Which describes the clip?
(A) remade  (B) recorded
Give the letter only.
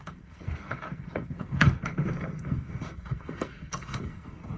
A